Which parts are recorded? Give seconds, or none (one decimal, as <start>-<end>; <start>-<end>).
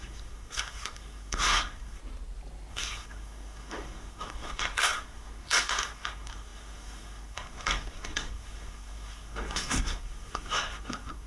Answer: 2.0-2.7